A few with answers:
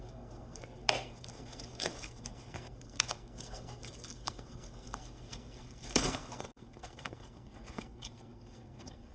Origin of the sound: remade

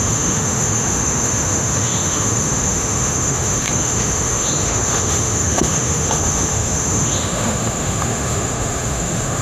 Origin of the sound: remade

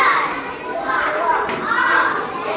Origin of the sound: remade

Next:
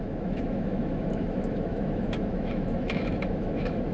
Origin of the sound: remade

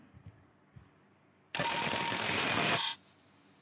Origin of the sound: recorded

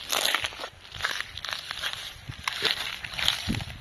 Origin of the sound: recorded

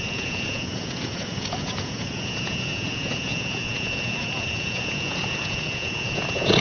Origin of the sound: remade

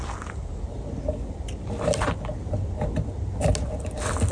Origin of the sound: recorded